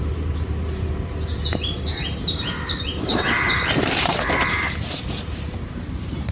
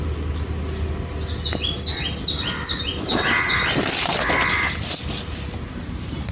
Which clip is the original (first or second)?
second